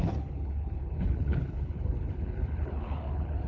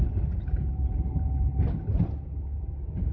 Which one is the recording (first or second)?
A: second